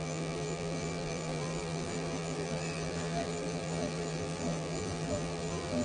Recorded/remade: remade